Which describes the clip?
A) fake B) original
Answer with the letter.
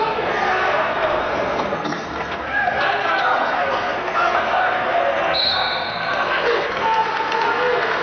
A